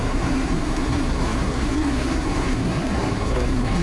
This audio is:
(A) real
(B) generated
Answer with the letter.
B